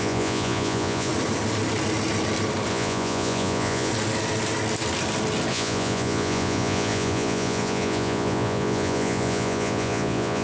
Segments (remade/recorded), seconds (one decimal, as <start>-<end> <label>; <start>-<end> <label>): 0.0-1.1 remade; 1.1-2.7 recorded; 2.7-3.9 remade; 3.9-5.5 recorded; 5.5-10.4 remade